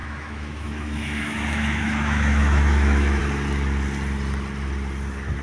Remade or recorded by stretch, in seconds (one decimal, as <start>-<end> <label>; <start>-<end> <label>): 0.0-3.2 remade; 3.2-5.4 recorded